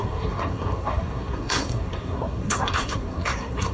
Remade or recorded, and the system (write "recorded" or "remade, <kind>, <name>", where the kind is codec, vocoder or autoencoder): remade, codec, SNAC